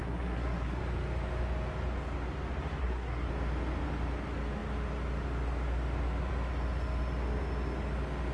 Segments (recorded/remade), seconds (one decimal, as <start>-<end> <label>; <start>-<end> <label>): 0.0-0.8 remade; 0.8-2.8 recorded; 2.8-3.3 remade; 3.3-8.3 recorded